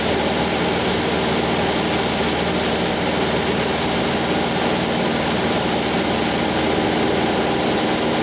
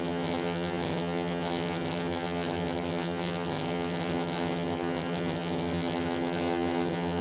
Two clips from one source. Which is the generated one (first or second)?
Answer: second